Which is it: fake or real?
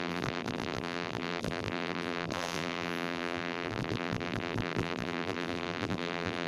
fake